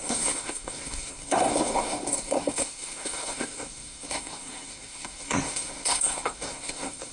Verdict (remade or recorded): remade